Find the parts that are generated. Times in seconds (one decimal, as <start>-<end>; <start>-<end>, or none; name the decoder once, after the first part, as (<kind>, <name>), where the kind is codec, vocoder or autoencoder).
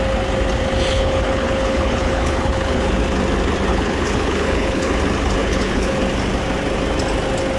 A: 0.9-3.0 (codec, HILCodec); 3.7-4.9; 5.4-6.0